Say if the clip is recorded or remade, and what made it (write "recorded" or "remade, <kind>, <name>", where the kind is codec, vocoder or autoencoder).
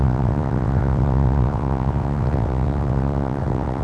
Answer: remade, vocoder, WaveNeXt